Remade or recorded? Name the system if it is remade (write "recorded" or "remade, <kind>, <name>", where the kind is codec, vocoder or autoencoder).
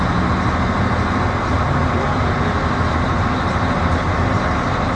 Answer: recorded